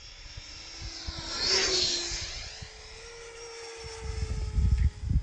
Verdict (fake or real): real